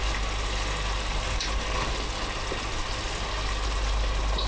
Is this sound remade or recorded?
recorded